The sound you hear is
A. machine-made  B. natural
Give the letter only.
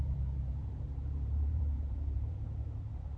A